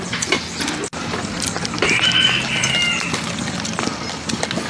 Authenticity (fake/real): real